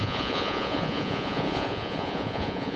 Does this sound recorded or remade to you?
remade